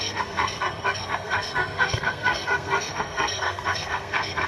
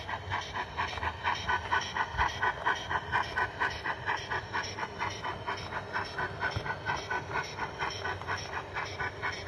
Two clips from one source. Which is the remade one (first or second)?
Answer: first